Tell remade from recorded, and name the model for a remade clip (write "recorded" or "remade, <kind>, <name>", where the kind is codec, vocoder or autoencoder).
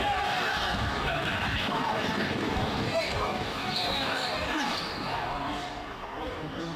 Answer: remade, codec, DAC